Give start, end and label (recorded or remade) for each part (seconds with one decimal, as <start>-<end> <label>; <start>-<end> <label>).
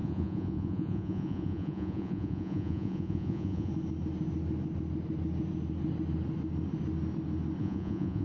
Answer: 0.0-3.7 remade; 3.7-7.6 recorded; 7.6-8.2 remade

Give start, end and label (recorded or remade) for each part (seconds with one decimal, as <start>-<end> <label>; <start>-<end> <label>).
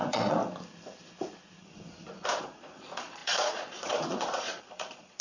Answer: 0.0-0.4 remade; 0.4-2.4 recorded; 2.4-5.2 remade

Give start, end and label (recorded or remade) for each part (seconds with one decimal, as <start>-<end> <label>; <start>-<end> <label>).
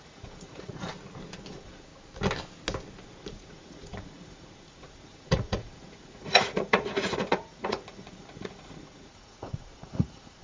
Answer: 0.0-0.9 remade; 0.9-1.5 recorded; 1.5-1.9 remade; 1.9-3.3 recorded; 3.3-10.4 remade